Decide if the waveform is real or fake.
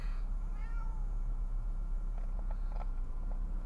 fake